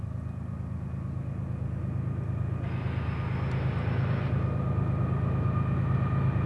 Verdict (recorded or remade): recorded